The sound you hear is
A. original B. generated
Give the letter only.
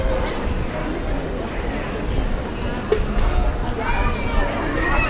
A